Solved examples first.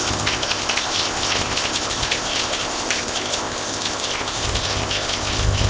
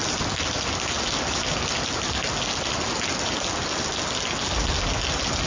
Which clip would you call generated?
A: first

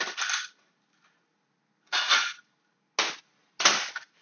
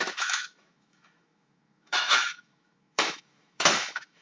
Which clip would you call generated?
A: second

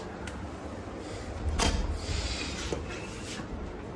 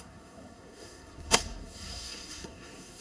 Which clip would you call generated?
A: second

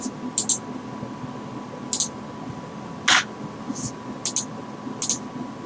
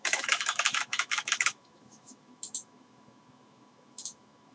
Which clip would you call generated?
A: second